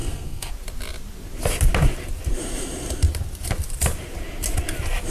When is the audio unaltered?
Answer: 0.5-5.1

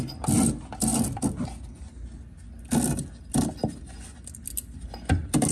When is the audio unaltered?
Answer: 0.0-5.5

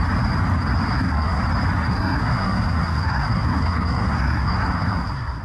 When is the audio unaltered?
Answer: 0.0-0.9; 1.4-1.9